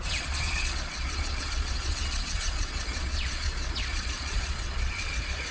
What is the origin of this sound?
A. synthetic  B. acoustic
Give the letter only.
A